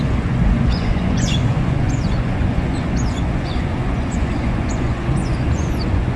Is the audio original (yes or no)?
no